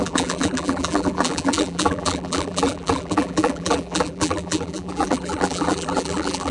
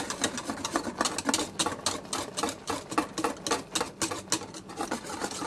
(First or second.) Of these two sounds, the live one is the second